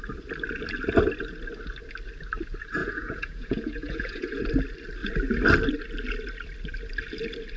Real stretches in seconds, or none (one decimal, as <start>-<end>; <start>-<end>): 0.0-2.8; 4.4-7.6